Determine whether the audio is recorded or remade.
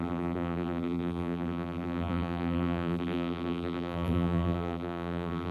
remade